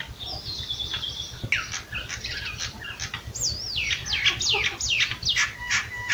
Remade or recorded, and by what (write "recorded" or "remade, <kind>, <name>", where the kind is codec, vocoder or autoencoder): recorded